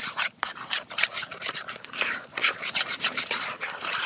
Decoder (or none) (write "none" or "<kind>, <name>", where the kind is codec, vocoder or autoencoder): vocoder, BigVGAN v2